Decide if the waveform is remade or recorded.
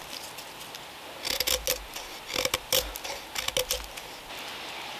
recorded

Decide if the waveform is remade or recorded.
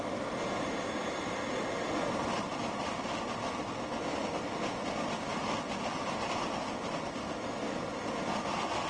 recorded